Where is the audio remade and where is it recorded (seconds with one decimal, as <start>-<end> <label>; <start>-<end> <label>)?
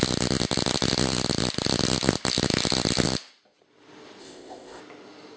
0.0-4.2 recorded; 4.2-4.8 remade; 4.8-5.4 recorded